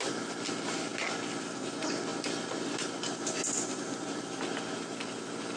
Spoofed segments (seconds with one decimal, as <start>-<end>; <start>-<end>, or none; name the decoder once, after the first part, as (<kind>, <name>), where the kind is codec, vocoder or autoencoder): none